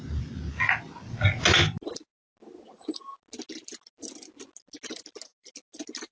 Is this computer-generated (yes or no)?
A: no